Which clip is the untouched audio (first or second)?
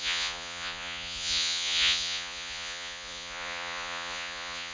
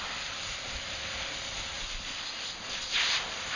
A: second